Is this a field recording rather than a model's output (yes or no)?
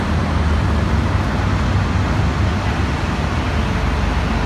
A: yes